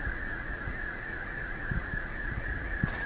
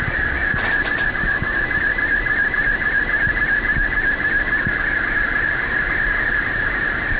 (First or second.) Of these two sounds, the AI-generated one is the first